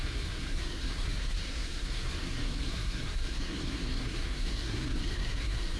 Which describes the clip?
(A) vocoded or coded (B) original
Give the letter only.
A